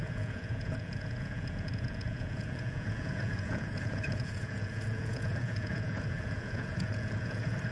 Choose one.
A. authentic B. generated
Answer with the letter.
B